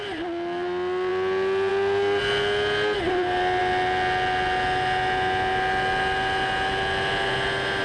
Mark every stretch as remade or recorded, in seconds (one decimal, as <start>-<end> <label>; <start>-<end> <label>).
0.0-7.8 recorded